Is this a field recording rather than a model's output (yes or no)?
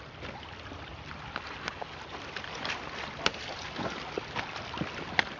yes